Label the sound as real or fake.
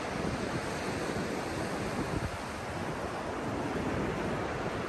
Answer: real